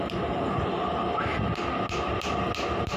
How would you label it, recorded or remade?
recorded